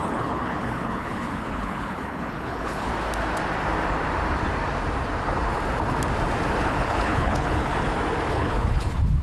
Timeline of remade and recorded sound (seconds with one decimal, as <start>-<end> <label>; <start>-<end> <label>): 0.0-2.9 remade; 2.9-6.6 recorded; 6.6-7.7 remade; 7.7-8.3 recorded; 8.3-9.2 remade